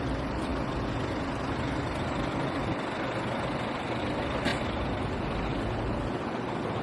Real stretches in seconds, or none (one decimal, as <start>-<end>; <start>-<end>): 0.0-6.8